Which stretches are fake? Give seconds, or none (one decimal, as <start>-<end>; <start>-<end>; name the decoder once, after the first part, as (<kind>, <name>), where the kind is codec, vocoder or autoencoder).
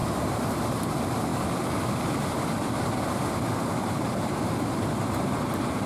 0.0-0.9 (vocoder, BigVGAN v2); 3.8-5.9